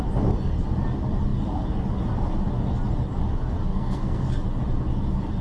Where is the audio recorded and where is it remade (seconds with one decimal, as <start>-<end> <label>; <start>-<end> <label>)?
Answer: 0.0-3.7 recorded; 3.7-4.3 remade; 4.3-5.4 recorded